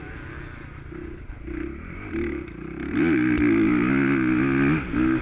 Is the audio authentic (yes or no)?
yes